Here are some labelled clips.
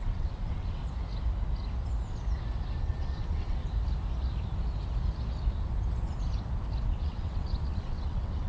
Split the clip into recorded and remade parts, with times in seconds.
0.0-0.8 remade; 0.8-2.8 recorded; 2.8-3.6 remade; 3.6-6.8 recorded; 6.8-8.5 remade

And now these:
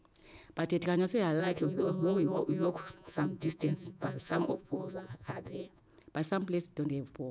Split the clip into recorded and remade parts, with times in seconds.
0.0-1.4 recorded; 1.4-5.8 remade; 5.8-7.3 recorded

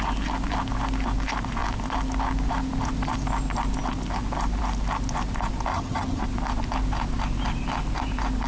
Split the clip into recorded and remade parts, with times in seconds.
0.0-5.7 recorded; 5.7-6.2 remade; 6.2-8.5 recorded

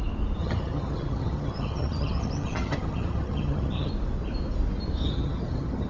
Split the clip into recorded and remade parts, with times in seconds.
0.0-0.4 recorded; 0.4-3.9 remade; 3.9-5.0 recorded; 5.0-5.9 remade

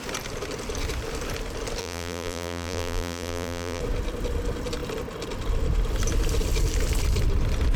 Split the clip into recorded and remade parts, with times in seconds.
0.0-1.8 recorded; 1.8-3.8 remade; 3.8-7.8 recorded